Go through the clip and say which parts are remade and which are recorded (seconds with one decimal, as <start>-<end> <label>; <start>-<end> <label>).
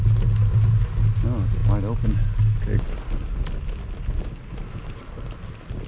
0.0-5.9 recorded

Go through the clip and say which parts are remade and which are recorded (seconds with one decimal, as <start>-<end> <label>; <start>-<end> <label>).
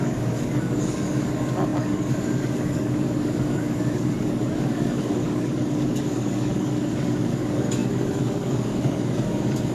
0.0-9.7 remade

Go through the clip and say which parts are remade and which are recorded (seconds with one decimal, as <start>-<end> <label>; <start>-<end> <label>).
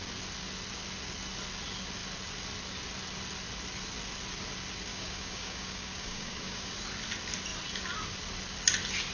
0.0-4.9 recorded; 4.9-6.7 remade; 6.7-9.1 recorded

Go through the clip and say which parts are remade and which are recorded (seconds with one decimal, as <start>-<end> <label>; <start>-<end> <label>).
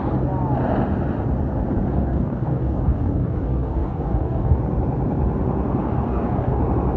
0.0-1.9 recorded; 1.9-4.6 remade; 4.6-5.8 recorded; 5.8-6.6 remade; 6.6-7.0 recorded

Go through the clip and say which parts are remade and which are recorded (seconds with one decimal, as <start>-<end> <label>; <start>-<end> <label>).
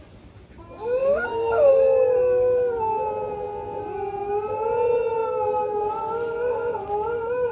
0.0-1.0 recorded; 1.0-1.7 remade; 1.7-7.5 recorded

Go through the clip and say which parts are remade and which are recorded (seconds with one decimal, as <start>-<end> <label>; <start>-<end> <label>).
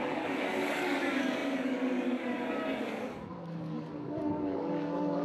0.0-5.2 remade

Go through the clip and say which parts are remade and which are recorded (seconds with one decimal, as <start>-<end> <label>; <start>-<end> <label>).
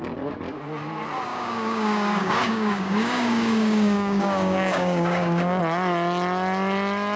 0.0-1.3 recorded; 1.3-5.6 remade; 5.6-7.2 recorded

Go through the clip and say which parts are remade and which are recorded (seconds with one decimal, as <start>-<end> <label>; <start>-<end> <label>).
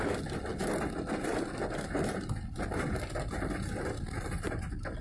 0.0-5.0 recorded